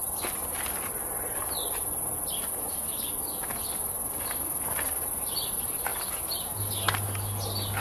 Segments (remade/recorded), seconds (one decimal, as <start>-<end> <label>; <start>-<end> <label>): 0.0-7.8 recorded